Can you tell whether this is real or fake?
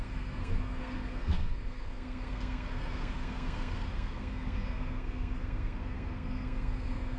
fake